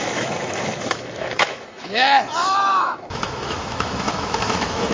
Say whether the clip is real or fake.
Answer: fake